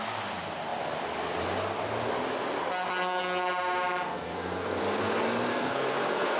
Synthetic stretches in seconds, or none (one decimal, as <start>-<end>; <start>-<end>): 4.1-4.8; 5.5-6.4